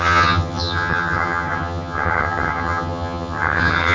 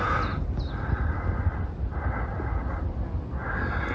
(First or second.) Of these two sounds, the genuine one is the second